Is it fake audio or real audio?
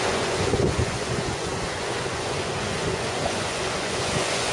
fake